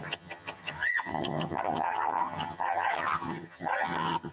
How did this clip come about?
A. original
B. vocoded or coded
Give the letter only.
B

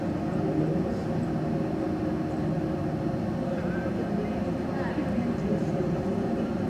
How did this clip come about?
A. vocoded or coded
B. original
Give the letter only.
A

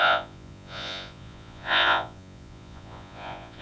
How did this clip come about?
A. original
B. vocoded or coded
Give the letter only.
B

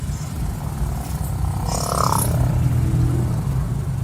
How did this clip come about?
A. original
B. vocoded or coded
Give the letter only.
A